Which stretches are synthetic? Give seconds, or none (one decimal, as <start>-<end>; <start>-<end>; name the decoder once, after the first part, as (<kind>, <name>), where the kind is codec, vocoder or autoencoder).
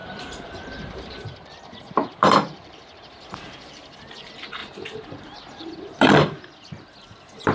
0.0-4.1 (vocoder, BigVGAN v2); 4.6-6.1